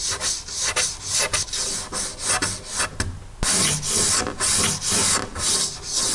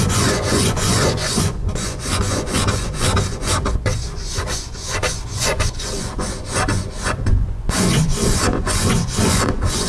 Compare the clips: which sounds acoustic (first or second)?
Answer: first